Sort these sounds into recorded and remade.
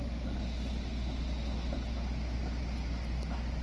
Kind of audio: recorded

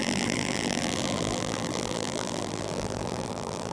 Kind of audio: remade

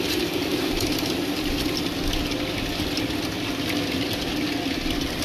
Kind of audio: recorded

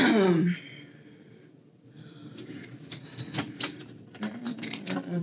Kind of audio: remade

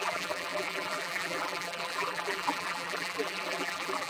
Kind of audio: remade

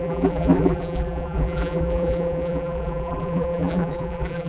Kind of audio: remade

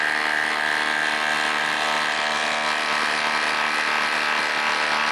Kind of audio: recorded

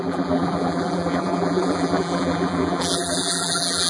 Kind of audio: remade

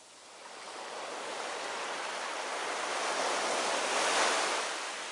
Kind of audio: recorded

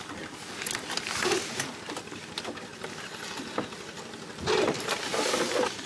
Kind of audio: recorded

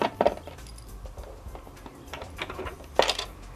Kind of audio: remade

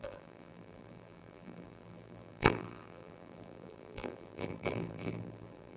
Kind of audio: remade